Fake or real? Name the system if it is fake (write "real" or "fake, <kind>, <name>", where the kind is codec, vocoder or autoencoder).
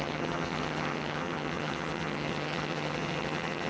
fake, vocoder, HiFi-GAN